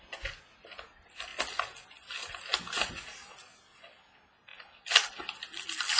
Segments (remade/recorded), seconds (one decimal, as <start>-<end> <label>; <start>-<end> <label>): 0.0-6.0 recorded

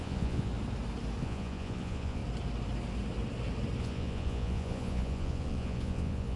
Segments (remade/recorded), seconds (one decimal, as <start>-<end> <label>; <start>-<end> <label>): 0.0-0.5 remade; 0.5-1.2 recorded; 1.2-2.2 remade; 2.2-3.8 recorded; 3.8-6.4 remade

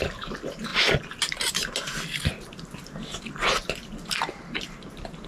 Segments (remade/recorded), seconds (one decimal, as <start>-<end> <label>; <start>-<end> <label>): 0.0-5.3 recorded

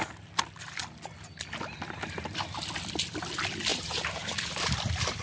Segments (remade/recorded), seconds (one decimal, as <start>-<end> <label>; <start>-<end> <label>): 0.0-3.7 recorded; 3.7-4.6 remade; 4.6-5.2 recorded

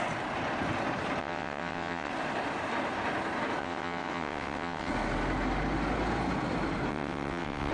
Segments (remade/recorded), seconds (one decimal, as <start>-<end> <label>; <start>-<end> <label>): 0.0-1.2 recorded; 1.2-2.1 remade; 2.1-3.6 recorded; 3.6-4.9 remade; 4.9-6.9 recorded; 6.9-7.7 remade

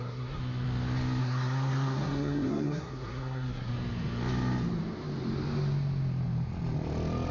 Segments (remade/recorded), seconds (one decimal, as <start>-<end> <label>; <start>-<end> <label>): 0.0-0.4 remade; 0.4-1.2 recorded; 1.2-3.7 remade; 3.7-7.3 recorded